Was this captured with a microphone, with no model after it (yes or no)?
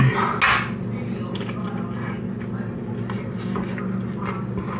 yes